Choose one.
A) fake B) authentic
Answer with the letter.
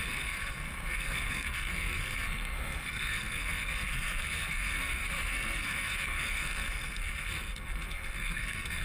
A